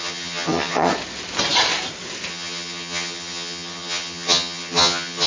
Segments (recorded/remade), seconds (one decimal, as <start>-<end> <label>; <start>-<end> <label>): 0.0-0.9 remade; 0.9-2.3 recorded; 2.3-5.3 remade